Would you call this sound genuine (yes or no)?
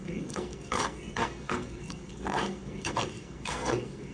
no